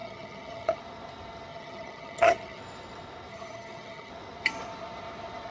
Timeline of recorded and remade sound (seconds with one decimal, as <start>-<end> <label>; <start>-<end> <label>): 0.0-0.8 remade; 0.8-1.5 recorded; 1.5-2.6 remade; 2.6-3.3 recorded; 3.3-4.1 remade; 4.1-5.5 recorded